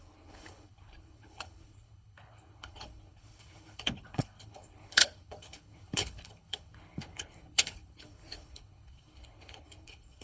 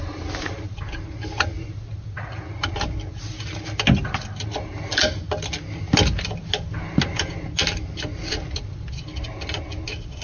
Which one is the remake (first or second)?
first